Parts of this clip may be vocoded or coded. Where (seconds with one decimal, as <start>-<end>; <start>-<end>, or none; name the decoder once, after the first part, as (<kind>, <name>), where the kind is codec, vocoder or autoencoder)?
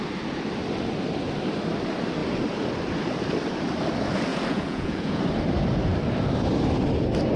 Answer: 4.3-5.2 (vocoder, Vocos)